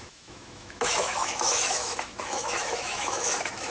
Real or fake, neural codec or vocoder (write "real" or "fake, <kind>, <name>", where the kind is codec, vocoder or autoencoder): fake, autoencoder, DAC-VAE